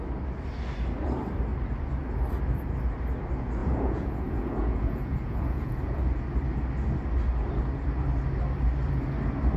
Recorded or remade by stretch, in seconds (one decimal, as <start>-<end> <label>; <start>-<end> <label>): 0.0-3.6 recorded; 3.6-6.0 remade; 6.0-9.6 recorded